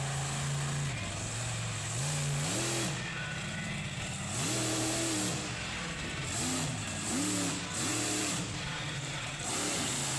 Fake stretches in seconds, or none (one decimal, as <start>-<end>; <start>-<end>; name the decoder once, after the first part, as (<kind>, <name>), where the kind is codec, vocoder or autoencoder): 7.9-10.2 (vocoder, BigVGAN v2)